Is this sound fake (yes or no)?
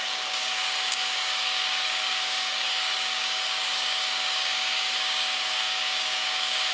yes